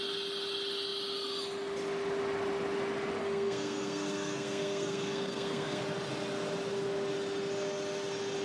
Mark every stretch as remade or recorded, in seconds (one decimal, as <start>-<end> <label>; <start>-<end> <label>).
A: 0.0-3.2 recorded; 3.2-5.8 remade; 5.8-8.4 recorded